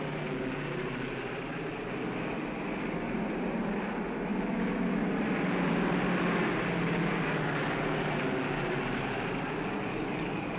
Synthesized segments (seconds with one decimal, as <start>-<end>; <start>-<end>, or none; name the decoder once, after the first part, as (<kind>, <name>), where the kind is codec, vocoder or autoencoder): 9.9-10.6 (codec, DAC)